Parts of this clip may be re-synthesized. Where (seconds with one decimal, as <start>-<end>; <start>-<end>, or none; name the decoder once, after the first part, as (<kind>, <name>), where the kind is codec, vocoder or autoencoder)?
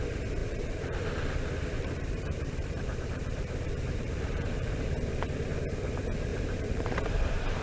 0.4-4.8 (vocoder, BigVGAN v2); 6.3-7.0